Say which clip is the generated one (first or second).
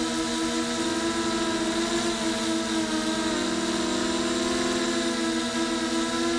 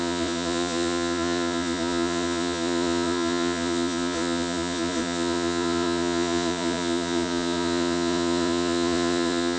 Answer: second